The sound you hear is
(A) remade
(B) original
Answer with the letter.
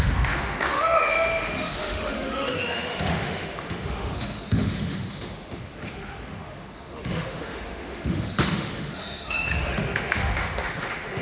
A